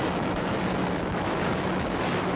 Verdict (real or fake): fake